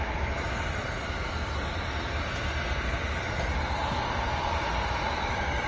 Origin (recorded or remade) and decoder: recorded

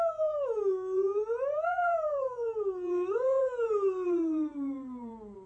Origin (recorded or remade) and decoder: remade, vocoder, Vocos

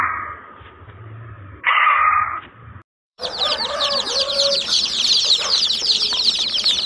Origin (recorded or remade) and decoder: remade, vocoder, BigVGAN v2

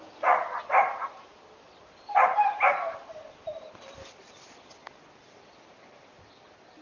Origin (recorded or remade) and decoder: recorded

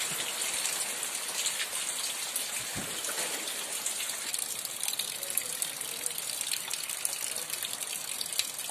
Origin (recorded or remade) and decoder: recorded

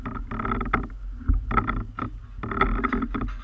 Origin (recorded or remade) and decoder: recorded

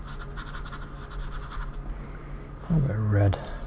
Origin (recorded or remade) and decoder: recorded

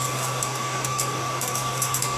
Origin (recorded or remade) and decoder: remade, codec, DAC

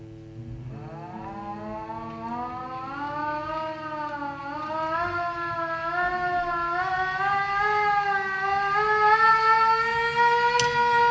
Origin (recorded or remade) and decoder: recorded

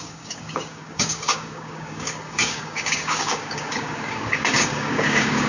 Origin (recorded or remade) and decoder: remade, codec, DAC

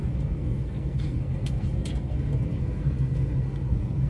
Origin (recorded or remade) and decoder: remade, codec, SNAC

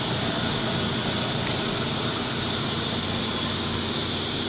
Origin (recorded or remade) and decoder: recorded